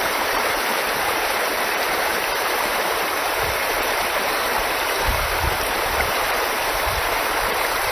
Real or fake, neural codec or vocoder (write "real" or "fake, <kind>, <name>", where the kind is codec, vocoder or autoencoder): fake, vocoder, BigVGAN v2